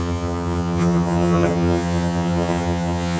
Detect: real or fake fake